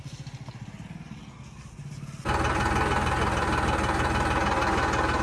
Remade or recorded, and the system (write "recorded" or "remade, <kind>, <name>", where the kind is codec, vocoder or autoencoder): recorded